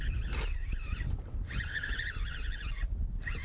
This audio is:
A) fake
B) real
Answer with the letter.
B